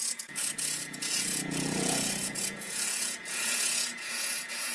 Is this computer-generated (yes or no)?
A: yes